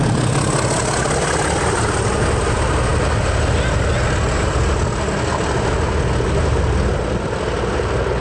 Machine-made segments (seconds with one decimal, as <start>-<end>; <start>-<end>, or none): none

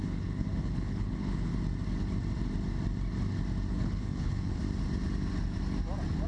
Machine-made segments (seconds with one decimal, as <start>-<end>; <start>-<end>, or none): 0.0-1.5; 3.7-4.6

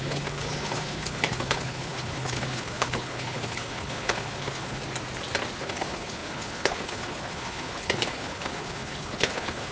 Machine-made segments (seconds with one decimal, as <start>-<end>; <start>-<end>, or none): 0.0-4.8; 5.6-9.7